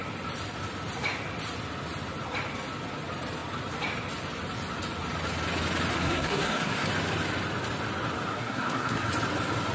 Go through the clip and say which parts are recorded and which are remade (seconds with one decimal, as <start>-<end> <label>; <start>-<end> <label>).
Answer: 0.0-5.9 recorded; 5.9-6.9 remade; 6.9-8.3 recorded; 8.3-9.1 remade; 9.1-9.7 recorded